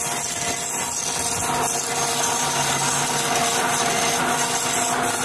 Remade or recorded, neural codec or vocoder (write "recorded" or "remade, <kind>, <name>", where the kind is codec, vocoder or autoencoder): recorded